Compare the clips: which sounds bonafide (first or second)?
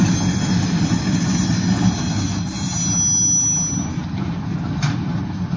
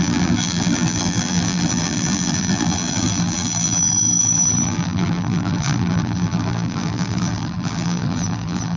first